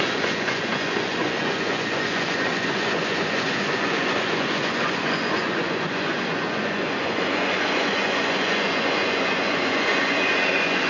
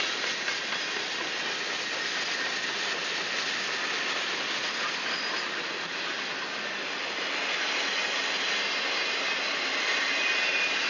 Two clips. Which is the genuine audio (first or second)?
second